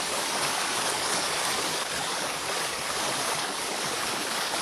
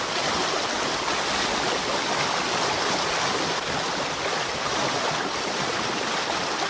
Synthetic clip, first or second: first